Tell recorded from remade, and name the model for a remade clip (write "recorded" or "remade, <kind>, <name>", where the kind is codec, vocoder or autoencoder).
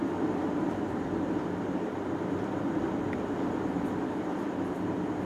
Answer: remade, vocoder, BigVGAN v2